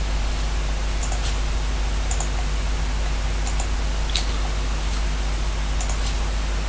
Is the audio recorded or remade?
recorded